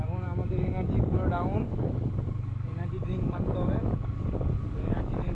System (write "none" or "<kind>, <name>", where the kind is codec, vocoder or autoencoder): codec, DAC